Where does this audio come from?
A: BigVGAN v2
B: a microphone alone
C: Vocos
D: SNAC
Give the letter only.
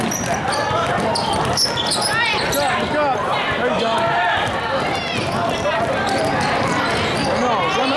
B